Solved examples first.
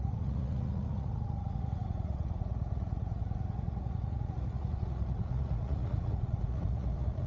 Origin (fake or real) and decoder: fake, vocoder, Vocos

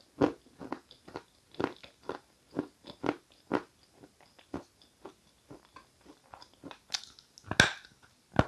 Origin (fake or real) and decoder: real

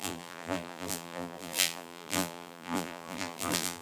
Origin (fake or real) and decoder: fake, vocoder, BigVGAN v2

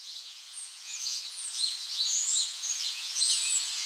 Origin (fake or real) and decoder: fake, vocoder, Vocos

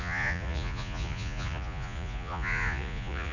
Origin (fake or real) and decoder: fake, vocoder, Vocos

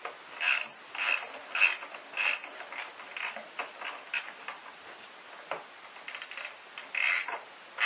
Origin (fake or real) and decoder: real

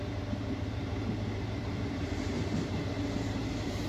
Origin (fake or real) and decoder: fake, vocoder, BigVGAN v2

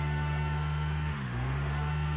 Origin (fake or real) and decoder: fake, autoencoder, DAC-VAE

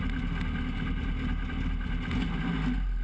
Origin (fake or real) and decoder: real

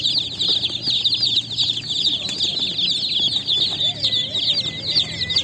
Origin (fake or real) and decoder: real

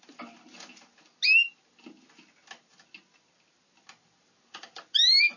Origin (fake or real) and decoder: real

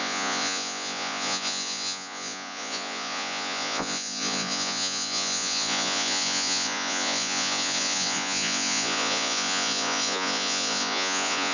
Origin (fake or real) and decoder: fake, vocoder, Vocos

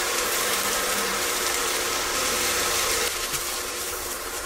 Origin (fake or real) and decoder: fake, vocoder, BigVGAN v2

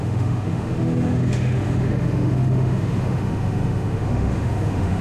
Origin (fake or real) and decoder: fake, autoencoder, DAC-VAE